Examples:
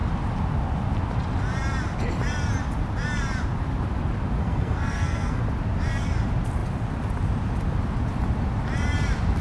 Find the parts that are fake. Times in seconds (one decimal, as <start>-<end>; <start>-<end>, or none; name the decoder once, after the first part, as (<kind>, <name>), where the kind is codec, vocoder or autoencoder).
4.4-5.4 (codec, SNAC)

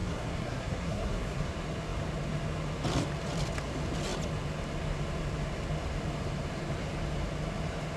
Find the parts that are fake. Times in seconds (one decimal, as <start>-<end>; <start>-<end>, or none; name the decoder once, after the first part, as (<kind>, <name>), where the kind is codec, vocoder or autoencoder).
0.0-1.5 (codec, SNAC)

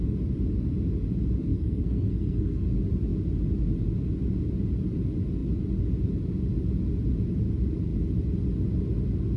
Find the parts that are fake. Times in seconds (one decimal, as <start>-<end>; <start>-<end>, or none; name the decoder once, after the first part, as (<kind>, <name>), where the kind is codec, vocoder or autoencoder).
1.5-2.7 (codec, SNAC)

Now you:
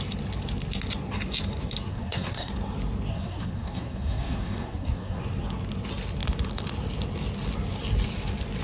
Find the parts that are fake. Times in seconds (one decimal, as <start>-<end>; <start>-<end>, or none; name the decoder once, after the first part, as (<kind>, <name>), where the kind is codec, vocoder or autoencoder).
1.9-2.5 (codec, SNAC); 3.1-5.2